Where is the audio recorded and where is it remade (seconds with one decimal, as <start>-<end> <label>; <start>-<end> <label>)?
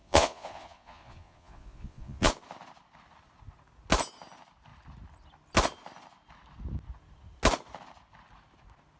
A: 0.0-2.3 remade; 2.3-9.0 recorded